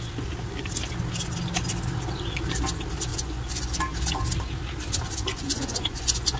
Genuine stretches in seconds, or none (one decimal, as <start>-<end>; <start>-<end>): 0.0-3.1; 3.8-5.3

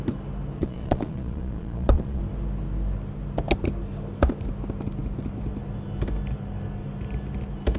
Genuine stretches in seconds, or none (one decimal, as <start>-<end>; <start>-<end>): 0.0-0.6; 2.2-7.8

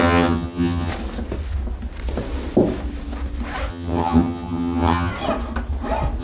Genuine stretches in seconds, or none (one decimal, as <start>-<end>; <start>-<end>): 0.9-3.7; 5.1-6.2

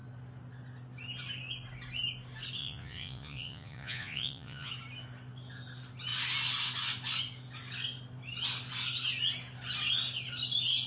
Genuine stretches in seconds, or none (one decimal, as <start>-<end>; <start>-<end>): 0.0-2.6; 4.7-10.9

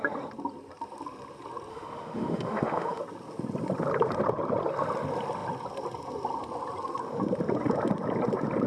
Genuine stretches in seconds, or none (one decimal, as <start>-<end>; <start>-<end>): 0.0-1.7; 3.0-8.7